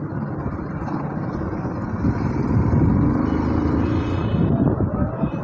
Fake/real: real